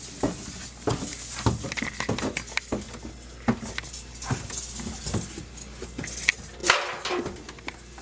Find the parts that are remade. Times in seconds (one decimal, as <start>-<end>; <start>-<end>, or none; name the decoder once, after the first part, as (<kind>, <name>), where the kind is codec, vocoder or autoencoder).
none